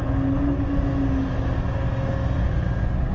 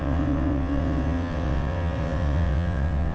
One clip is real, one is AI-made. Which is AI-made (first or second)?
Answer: second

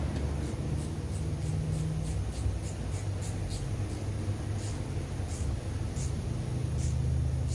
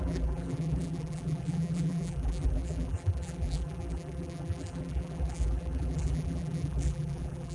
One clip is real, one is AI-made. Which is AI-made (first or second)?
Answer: second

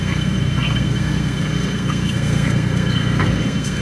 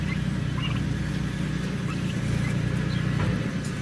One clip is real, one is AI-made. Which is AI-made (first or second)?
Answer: first